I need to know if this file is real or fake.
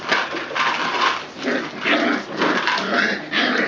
real